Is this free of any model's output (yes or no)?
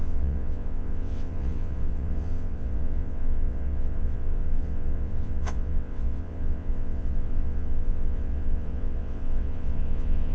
no